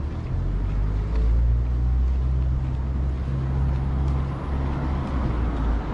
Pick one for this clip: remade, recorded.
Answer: recorded